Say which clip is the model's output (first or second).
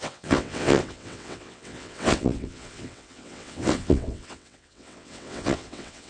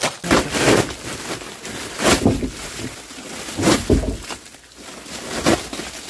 first